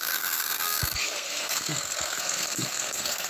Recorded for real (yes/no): no